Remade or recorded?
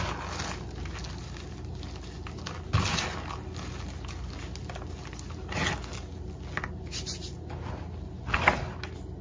recorded